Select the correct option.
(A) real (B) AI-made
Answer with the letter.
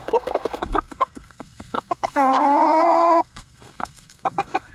B